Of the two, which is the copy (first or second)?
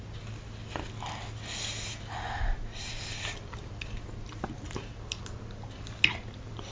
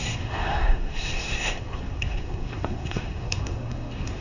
second